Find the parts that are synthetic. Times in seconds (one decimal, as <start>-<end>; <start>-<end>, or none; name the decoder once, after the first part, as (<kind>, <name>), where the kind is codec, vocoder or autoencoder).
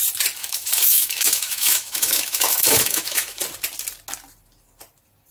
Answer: 0.4-3.4 (autoencoder, DAC-VAE)